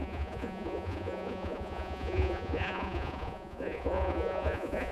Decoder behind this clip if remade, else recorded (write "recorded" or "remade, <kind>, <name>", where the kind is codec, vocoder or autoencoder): remade, vocoder, Vocos